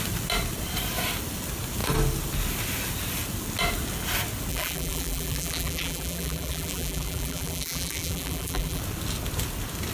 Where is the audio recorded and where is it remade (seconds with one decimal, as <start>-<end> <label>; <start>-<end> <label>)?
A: 0.0-4.5 recorded; 4.5-8.8 remade; 8.8-9.9 recorded